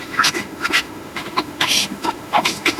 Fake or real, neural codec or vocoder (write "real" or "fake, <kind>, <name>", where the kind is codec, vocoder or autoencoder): fake, autoencoder, DAC-VAE